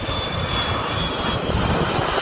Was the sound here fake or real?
real